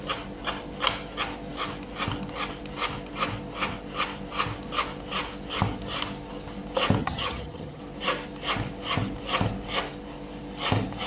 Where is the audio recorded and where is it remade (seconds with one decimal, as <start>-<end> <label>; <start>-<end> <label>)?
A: 0.0-7.0 recorded; 7.0-7.8 remade; 7.8-11.1 recorded